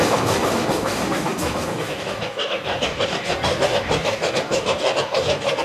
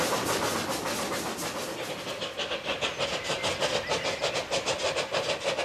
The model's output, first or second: first